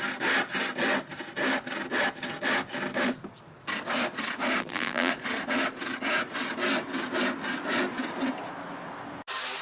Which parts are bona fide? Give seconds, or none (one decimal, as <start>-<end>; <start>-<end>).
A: 0.0-4.6; 5.1-9.6